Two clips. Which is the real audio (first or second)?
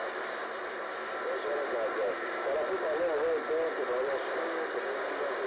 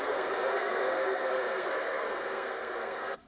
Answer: first